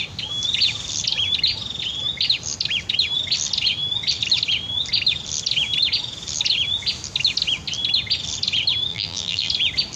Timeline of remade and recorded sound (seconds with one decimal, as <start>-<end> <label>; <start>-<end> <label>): 0.0-8.9 recorded; 8.9-9.5 remade; 9.5-10.0 recorded